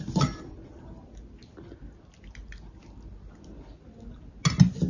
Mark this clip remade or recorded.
recorded